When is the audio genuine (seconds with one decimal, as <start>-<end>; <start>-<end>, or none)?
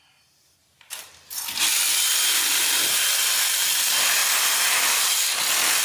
0.0-0.6; 3.0-5.8